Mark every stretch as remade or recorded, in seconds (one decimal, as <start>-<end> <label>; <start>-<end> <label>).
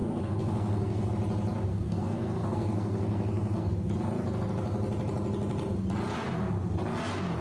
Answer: 0.0-1.1 remade; 1.1-1.7 recorded; 1.7-3.7 remade; 3.7-7.4 recorded